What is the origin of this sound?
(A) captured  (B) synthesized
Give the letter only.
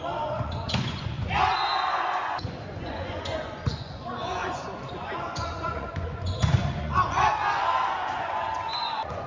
B